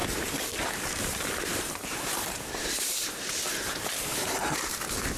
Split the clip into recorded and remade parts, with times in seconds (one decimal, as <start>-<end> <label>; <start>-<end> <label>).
0.0-4.4 remade; 4.4-5.2 recorded